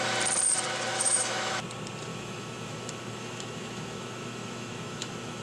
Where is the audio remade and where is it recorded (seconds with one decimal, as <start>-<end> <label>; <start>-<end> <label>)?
0.0-0.9 recorded; 0.9-1.6 remade; 1.6-2.1 recorded; 2.1-5.4 remade